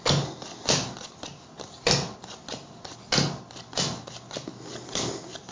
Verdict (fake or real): real